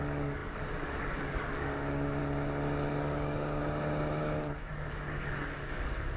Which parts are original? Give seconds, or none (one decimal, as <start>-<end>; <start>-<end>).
2.2-3.0; 3.6-4.2